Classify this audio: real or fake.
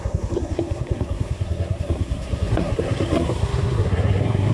fake